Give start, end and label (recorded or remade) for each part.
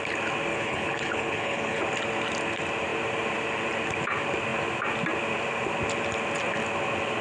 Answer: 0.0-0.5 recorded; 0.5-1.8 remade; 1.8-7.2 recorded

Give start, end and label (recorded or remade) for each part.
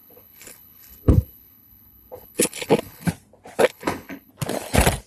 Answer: 0.0-3.1 remade; 3.1-3.6 recorded; 3.6-4.3 remade; 4.3-5.1 recorded